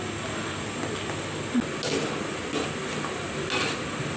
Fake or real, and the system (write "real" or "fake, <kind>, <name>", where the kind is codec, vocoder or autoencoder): real